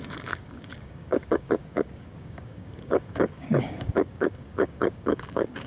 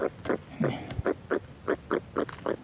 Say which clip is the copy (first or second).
first